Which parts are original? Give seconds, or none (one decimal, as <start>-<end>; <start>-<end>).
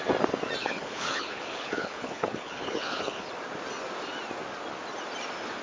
0.0-0.6; 3.3-5.6